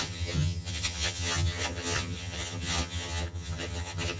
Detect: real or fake fake